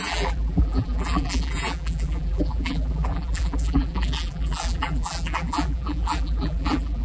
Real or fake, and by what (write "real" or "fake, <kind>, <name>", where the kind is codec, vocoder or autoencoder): fake, vocoder, BigVGAN v2